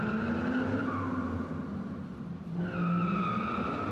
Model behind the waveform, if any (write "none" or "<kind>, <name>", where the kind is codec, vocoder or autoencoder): none